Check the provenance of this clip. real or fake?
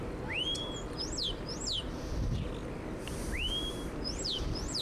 real